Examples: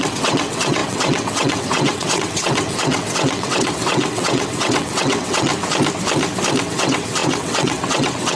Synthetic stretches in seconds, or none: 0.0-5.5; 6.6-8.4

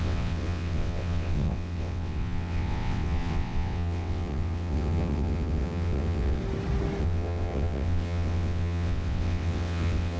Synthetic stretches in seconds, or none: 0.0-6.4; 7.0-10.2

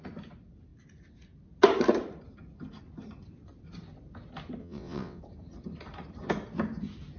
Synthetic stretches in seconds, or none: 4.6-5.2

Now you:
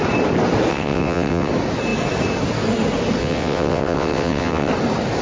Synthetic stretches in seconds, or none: 0.7-1.5; 3.2-4.7

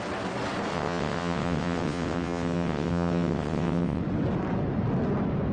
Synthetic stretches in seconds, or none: 0.7-4.0

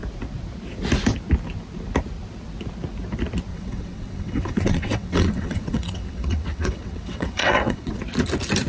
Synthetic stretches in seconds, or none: 3.5-8.0

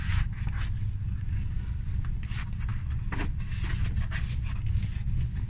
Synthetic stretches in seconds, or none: none